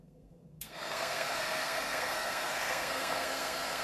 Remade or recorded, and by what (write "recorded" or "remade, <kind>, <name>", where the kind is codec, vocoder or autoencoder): remade, codec, SNAC